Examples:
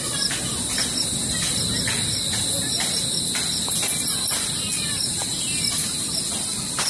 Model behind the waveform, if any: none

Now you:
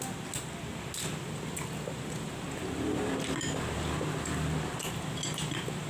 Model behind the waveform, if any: none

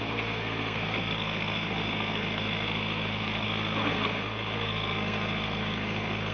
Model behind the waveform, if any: codec, SNAC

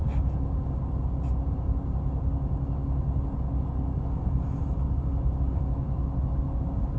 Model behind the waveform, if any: none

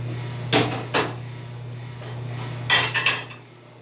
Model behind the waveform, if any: none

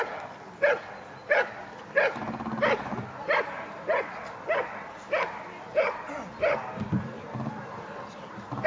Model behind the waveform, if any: none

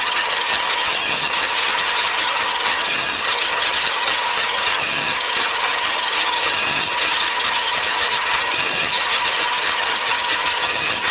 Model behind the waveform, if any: vocoder, HiFi-GAN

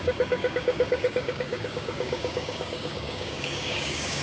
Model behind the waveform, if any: codec, DAC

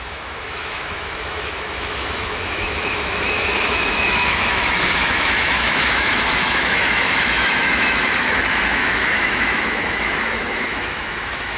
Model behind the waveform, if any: autoencoder, DAC-VAE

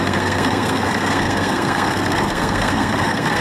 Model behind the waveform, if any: codec, SNAC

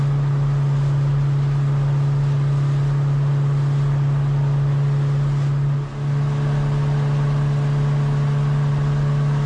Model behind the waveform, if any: none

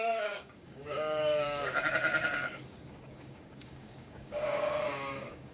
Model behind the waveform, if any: codec, DAC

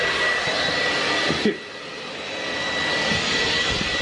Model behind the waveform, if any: none